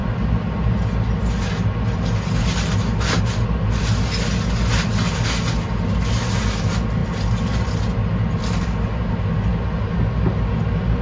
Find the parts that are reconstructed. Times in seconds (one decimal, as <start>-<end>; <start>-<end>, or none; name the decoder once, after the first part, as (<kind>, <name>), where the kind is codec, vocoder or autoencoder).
none